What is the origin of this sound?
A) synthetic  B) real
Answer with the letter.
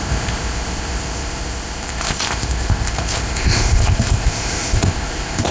A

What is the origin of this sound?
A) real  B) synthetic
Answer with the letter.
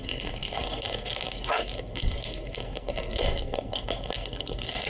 B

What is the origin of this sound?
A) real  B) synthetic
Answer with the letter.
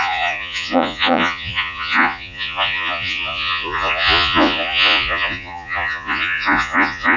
B